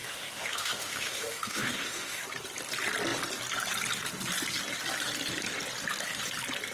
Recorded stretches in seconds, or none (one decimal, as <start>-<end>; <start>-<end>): 2.2-6.7